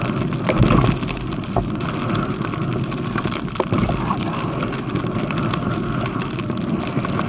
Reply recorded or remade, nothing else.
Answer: recorded